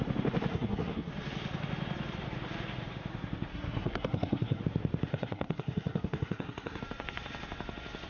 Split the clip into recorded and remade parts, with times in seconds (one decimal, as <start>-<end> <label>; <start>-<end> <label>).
0.0-0.5 recorded; 0.5-1.1 remade; 1.1-3.5 recorded; 3.5-4.6 remade; 4.6-5.1 recorded; 5.1-6.8 remade; 6.8-8.1 recorded